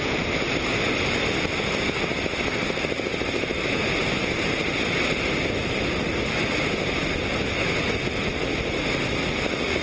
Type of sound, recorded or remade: recorded